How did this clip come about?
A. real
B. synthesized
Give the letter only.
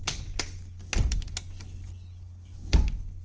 A